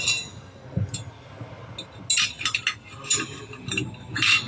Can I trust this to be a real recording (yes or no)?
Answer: yes